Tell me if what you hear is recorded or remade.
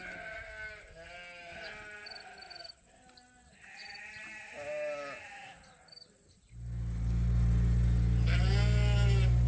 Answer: recorded